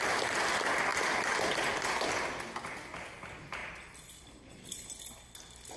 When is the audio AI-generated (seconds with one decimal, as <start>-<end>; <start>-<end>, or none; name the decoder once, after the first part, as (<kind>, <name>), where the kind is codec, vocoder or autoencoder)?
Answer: 3.6-4.2 (vocoder, BigVGAN v2)